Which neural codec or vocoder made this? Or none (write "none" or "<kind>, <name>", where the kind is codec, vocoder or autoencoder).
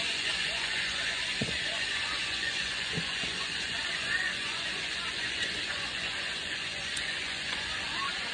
vocoder, Vocos